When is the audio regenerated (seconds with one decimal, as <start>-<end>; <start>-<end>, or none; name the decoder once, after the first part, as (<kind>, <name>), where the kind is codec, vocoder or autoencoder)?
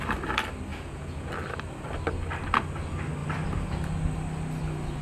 0.7-1.3 (vocoder, Vocos)